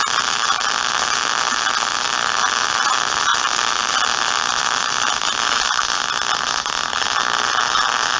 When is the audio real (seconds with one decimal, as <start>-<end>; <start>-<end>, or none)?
0.0-8.2